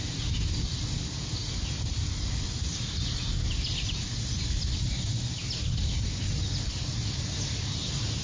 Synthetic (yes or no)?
no